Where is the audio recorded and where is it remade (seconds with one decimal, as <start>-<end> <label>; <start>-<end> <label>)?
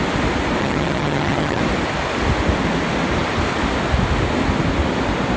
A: 0.0-0.6 recorded; 0.6-1.6 remade; 1.6-5.4 recorded